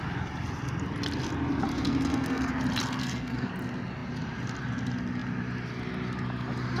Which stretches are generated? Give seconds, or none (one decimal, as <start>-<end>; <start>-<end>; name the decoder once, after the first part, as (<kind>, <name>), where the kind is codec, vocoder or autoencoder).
1.7-2.5 (codec, SNAC); 3.0-3.5